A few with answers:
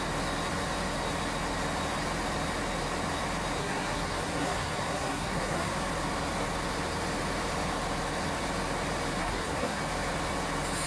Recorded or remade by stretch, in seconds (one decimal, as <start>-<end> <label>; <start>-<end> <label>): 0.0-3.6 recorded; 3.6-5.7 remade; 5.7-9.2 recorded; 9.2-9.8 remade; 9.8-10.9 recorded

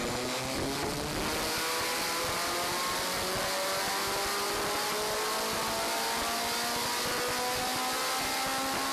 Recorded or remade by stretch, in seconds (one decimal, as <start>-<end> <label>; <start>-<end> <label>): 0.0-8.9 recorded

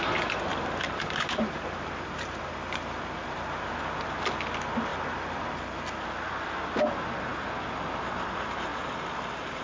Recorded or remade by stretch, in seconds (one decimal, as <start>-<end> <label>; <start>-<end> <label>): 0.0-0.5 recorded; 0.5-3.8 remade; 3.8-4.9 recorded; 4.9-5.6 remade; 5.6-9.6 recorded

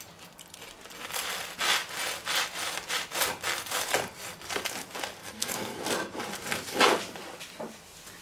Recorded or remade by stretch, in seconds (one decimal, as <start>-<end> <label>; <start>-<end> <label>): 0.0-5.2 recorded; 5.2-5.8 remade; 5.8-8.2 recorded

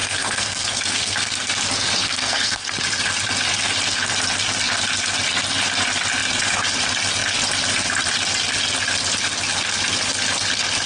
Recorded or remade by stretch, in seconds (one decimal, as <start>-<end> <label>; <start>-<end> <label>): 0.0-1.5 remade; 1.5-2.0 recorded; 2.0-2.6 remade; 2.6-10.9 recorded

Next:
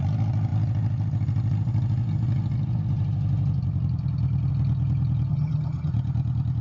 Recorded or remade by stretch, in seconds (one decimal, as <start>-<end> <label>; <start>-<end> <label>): 0.0-5.3 recorded; 5.3-5.9 remade; 5.9-6.6 recorded

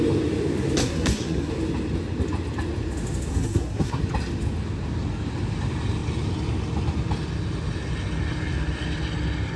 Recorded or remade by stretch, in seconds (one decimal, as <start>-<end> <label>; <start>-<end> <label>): 0.0-0.8 recorded; 0.8-1.5 remade; 1.5-3.3 recorded; 3.3-4.0 remade; 4.0-9.6 recorded